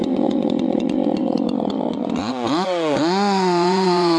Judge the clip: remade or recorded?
remade